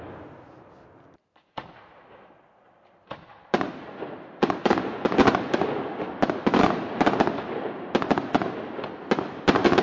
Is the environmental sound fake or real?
real